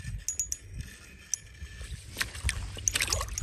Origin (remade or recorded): recorded